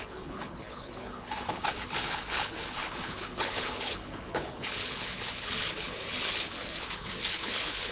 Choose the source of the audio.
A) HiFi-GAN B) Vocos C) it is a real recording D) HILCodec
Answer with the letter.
D